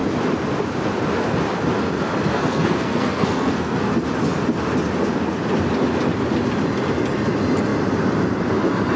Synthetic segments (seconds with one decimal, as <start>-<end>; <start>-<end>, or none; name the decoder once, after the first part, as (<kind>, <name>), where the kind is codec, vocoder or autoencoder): 2.3-3.9 (codec, SNAC)

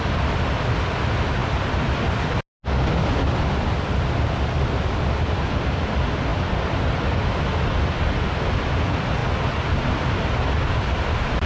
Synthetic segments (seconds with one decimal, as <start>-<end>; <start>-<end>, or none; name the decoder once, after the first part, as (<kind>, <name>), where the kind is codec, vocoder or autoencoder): none

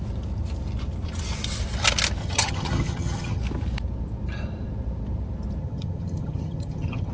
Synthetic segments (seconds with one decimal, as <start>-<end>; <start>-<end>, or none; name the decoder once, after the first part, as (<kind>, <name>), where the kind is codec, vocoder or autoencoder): 2.2-3.4 (vocoder, HiFi-GAN); 5.6-7.1

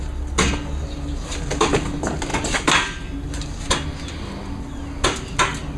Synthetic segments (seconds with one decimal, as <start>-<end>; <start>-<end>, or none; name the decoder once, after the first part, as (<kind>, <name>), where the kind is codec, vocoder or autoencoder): none

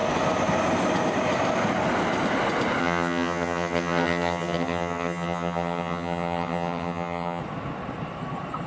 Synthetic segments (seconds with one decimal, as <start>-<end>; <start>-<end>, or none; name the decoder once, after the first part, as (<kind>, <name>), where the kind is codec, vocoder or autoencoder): 2.8-7.4 (vocoder, HiFi-GAN)